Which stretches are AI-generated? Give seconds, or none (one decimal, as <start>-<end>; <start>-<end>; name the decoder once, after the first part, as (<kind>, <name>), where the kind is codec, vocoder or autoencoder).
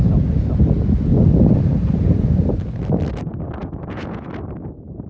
3.6-4.3 (vocoder, Vocos)